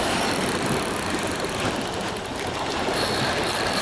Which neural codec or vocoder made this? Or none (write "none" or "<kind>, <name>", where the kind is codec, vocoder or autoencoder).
vocoder, BigVGAN v2